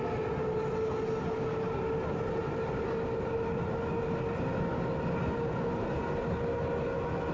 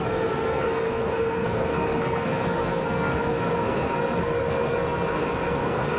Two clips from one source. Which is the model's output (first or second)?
second